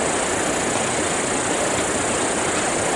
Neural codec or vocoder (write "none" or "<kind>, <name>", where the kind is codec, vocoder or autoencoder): none